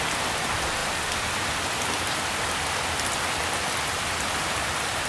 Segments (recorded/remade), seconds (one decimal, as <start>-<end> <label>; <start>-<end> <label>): 0.0-5.1 recorded